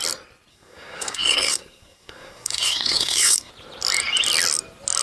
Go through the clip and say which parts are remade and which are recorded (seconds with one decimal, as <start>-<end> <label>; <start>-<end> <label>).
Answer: 0.0-0.5 recorded; 0.5-3.5 remade; 3.5-5.0 recorded